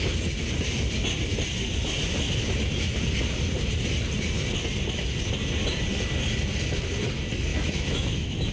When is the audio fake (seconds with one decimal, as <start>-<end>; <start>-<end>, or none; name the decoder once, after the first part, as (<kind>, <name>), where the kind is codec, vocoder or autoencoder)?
7.5-8.5 (autoencoder, DAC-VAE)